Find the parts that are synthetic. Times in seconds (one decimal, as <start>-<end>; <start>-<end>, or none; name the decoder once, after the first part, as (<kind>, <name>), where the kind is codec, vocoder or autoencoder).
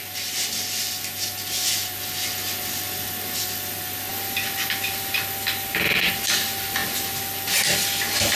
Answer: none